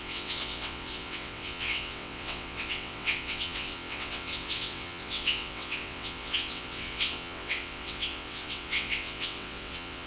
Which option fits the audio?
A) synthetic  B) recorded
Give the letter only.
A